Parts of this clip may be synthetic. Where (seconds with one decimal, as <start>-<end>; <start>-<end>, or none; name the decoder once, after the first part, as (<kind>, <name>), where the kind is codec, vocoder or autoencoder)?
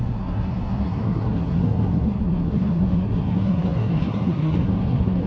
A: 0.0-5.3 (codec, SNAC)